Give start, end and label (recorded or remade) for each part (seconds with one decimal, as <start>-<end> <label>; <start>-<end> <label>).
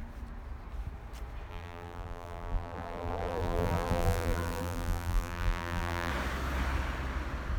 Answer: 0.0-1.5 recorded; 1.5-6.1 remade; 6.1-7.6 recorded